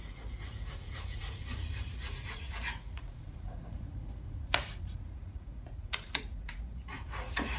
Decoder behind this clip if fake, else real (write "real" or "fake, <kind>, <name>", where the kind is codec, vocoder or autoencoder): fake, vocoder, Vocos